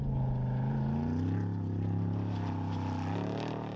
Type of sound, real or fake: real